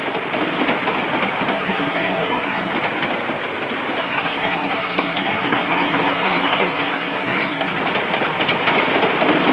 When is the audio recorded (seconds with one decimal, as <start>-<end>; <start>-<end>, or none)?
0.0-1.5; 2.7-4.0; 7.7-9.5

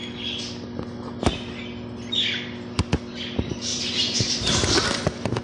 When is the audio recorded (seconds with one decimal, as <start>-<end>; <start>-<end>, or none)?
0.0-3.7; 4.5-5.4

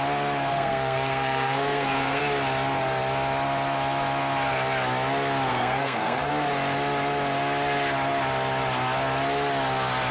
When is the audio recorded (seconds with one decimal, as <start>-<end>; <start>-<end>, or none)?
0.0-0.5; 2.2-5.5; 6.3-10.1

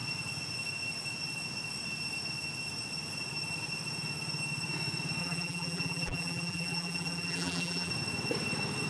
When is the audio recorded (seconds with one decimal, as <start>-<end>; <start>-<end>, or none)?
0.0-5.2; 7.9-8.9

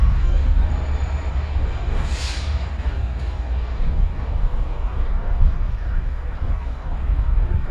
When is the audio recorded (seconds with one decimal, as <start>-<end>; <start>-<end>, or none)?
0.7-1.3